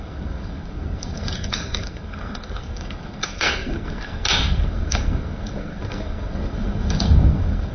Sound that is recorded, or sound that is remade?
remade